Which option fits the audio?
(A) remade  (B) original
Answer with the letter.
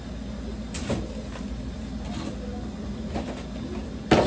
B